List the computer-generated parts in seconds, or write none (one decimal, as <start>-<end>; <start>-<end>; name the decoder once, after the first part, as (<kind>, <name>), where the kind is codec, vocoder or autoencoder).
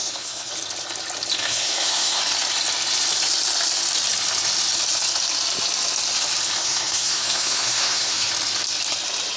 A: 0.0-0.5 (codec, SNAC); 1.4-2.2; 6.6-8.3